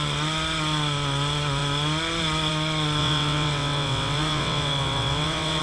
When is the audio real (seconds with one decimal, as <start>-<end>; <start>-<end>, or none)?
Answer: 0.0-3.0